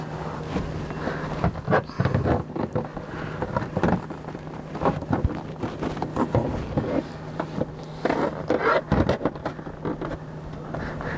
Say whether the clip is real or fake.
real